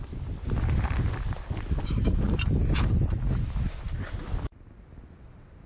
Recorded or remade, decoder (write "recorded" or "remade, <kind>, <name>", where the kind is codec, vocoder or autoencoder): recorded